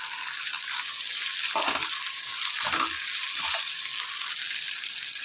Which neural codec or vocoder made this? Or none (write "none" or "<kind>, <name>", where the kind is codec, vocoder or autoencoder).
none